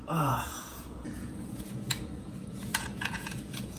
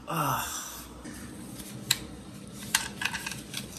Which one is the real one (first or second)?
second